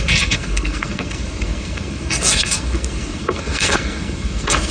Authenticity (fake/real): fake